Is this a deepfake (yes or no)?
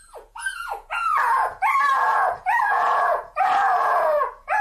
yes